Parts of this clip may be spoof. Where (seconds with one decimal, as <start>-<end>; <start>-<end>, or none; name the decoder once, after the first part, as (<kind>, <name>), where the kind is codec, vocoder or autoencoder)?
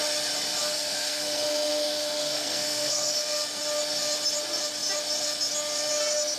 0.6-3.6 (codec, SNAC)